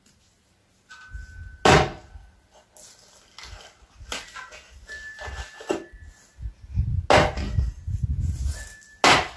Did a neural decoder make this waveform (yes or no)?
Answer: no